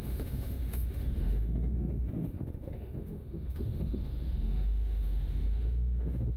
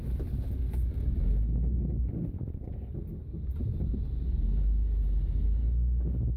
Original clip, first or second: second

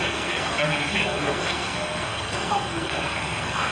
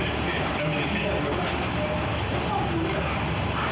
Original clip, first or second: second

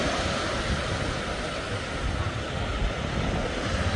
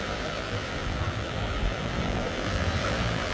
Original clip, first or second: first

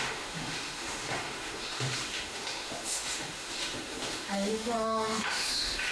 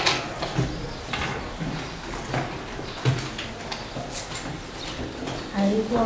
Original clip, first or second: second